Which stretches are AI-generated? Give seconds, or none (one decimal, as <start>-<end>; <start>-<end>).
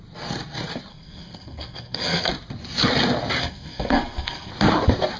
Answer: 0.9-2.3; 3.4-4.5